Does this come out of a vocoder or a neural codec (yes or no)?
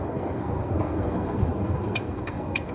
yes